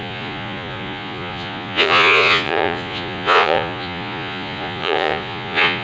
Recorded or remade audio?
remade